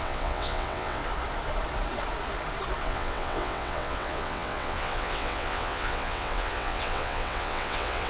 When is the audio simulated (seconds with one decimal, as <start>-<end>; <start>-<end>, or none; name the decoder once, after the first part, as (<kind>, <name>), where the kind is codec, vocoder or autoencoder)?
0.0-1.0 (vocoder, WaveNeXt); 2.8-8.1